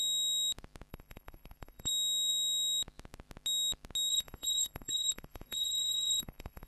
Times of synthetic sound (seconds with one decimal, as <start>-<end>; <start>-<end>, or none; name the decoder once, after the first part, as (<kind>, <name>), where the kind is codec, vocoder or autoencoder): 0.9-1.9 (codec, SNAC); 4.1-6.7

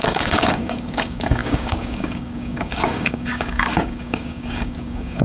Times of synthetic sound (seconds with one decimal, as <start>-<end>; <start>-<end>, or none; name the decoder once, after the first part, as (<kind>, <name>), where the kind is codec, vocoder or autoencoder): 0.0-5.2 (codec, DAC)

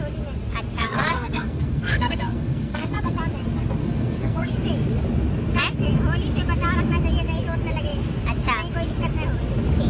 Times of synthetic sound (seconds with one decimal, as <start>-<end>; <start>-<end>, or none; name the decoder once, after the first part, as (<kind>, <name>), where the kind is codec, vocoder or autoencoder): 0.8-3.2 (codec, SNAC); 3.8-4.5

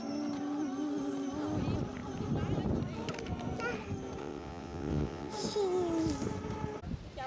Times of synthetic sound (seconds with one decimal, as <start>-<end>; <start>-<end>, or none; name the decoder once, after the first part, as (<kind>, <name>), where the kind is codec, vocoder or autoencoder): 4.2-5.3 (vocoder, WaveNeXt)

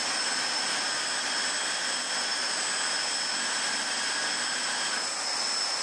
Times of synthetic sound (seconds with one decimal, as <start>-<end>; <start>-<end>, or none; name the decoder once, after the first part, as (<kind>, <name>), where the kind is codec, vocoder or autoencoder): none

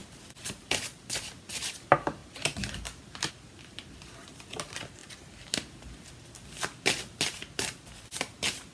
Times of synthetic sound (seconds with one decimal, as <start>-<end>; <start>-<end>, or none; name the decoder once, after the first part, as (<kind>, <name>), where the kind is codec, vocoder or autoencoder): 1.5-2.2 (vocoder, BigVGAN v2); 3.3-5.0; 7.2-8.7